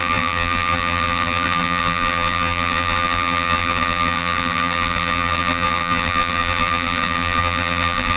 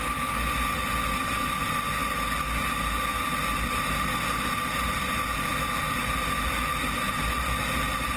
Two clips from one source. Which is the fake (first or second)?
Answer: first